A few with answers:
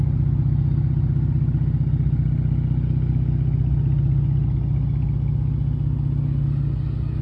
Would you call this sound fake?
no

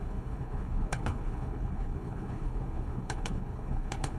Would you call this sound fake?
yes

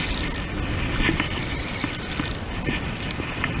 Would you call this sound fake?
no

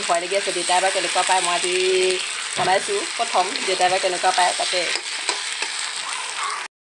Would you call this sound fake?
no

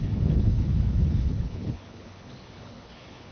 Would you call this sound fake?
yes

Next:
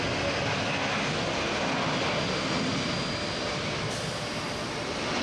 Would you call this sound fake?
no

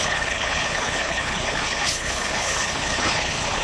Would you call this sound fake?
yes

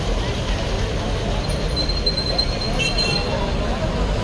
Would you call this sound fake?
no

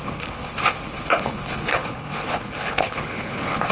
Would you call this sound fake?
yes